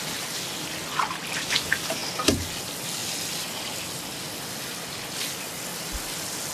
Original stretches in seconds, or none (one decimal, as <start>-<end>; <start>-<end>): 0.0-5.7

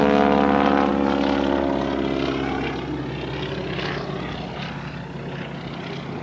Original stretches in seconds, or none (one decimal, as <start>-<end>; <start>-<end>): 0.0-6.2

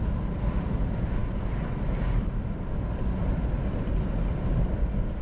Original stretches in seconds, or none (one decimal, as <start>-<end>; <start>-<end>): 0.0-5.2

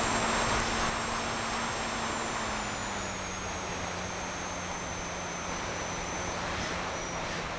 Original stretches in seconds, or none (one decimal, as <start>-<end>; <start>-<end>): 0.0-2.8

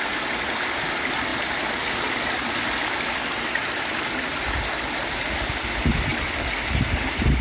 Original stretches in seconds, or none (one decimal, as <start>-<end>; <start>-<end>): 0.0-7.4

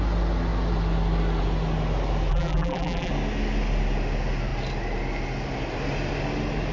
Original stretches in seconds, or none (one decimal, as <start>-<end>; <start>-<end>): 0.0-2.3; 3.1-6.7

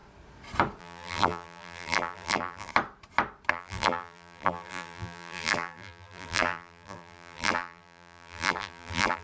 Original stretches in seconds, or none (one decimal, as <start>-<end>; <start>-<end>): 0.0-0.8; 2.7-3.5